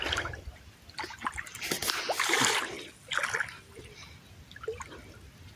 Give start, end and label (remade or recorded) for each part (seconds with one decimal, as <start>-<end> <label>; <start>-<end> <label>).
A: 0.0-5.6 recorded